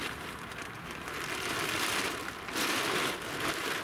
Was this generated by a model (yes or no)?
no